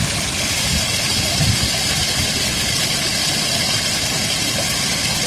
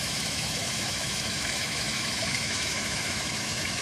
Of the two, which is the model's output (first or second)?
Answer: second